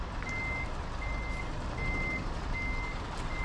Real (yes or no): yes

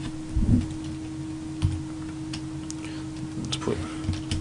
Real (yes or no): yes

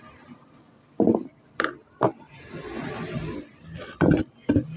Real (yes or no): yes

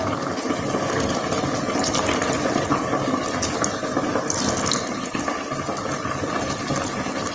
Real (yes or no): yes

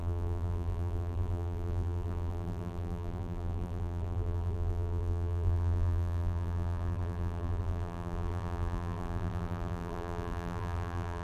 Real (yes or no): no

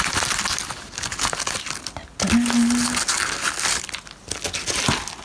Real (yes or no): yes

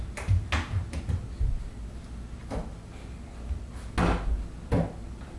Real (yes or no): yes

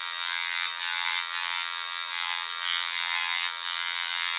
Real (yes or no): no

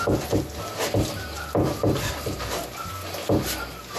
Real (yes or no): yes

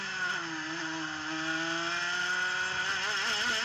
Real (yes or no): yes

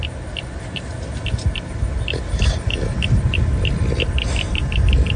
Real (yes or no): yes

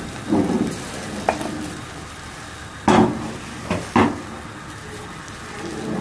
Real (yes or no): no